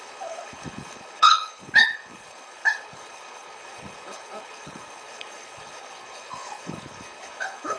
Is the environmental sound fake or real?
fake